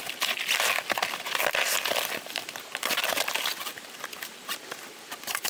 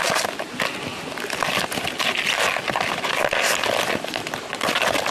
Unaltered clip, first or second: second